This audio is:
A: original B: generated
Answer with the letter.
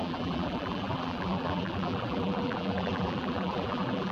B